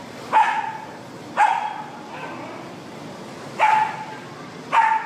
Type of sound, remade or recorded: recorded